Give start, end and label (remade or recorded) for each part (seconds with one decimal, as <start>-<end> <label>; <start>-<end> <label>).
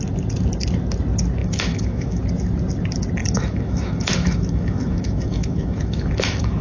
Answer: 0.0-1.4 recorded; 1.4-2.2 remade; 2.2-3.2 recorded; 3.2-6.6 remade